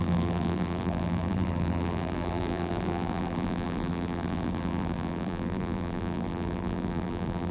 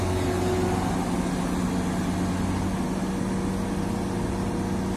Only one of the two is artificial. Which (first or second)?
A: first